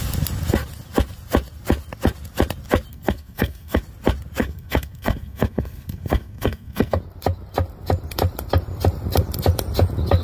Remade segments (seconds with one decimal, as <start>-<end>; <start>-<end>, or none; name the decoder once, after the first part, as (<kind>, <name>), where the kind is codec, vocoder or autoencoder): 2.9-3.8 (codec, SNAC); 4.4-7.0